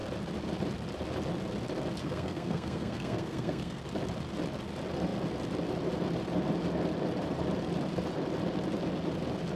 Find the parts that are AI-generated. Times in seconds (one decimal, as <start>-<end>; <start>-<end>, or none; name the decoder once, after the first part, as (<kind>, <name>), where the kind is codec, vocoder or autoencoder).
2.0-3.8 (codec, SNAC)